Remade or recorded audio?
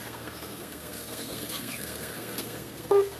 remade